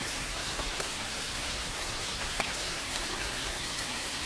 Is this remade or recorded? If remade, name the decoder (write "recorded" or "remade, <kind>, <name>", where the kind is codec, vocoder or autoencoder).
remade, codec, SNAC